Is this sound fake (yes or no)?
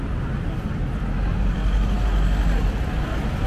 no